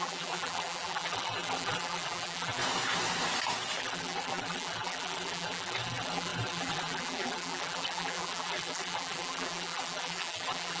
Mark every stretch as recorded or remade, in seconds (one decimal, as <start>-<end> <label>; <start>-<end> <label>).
0.0-2.6 remade; 2.6-3.8 recorded; 3.8-10.8 remade